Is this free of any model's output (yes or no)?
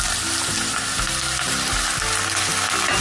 yes